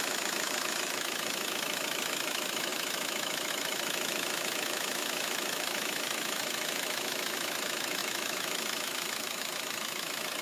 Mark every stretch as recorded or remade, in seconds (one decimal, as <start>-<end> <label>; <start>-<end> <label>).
0.0-10.4 remade